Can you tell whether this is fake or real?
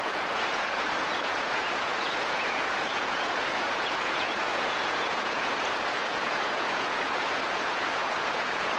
fake